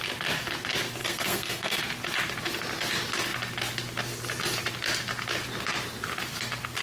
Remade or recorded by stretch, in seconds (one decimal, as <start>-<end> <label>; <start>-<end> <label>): 0.0-1.0 recorded; 1.0-1.8 remade; 1.8-6.8 recorded